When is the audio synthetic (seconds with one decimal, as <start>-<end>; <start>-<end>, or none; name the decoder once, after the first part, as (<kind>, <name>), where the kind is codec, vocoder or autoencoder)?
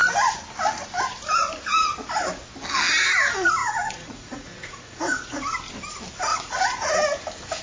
3.6-5.4 (vocoder, Vocos); 6.3-6.9